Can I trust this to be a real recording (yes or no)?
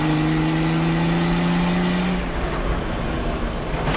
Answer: yes